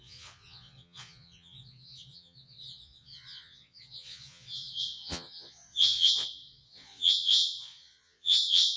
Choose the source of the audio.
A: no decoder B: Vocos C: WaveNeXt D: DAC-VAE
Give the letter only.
B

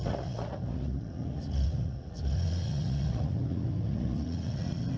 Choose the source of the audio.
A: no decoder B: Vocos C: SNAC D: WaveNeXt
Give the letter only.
B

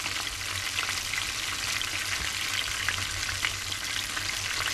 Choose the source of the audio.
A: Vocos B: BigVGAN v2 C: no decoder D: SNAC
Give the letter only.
C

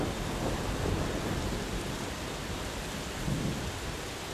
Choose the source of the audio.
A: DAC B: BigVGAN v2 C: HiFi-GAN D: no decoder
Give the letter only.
D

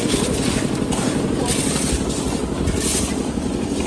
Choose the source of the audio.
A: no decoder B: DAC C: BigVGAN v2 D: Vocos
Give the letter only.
A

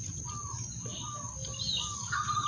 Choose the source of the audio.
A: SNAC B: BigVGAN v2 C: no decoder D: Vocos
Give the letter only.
C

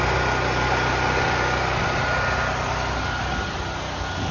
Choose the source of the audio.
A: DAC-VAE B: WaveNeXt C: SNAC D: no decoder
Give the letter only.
D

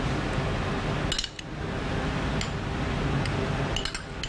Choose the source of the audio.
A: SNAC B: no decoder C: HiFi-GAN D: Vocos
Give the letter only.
B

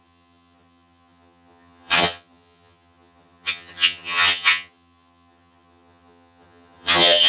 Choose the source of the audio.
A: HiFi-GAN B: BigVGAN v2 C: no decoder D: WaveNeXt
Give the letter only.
A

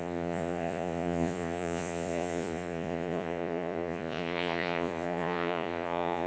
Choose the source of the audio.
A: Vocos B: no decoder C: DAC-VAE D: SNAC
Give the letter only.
A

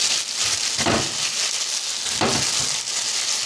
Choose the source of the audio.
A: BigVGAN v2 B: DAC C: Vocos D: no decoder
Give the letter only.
D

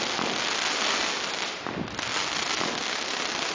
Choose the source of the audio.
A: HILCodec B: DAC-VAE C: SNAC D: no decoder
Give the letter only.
D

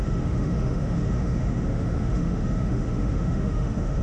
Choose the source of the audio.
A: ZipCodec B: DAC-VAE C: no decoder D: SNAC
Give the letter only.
B